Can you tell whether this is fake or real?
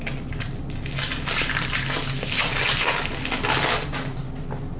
real